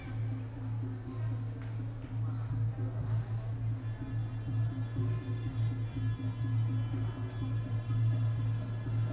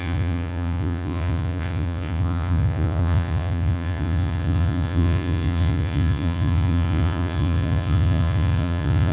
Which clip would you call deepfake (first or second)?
second